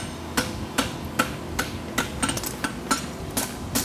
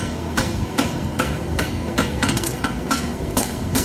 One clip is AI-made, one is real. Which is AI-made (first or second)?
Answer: second